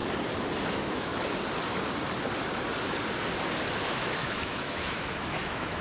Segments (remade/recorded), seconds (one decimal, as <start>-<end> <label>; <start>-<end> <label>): 0.0-0.7 recorded; 0.7-1.1 remade; 1.1-3.8 recorded; 3.8-5.8 remade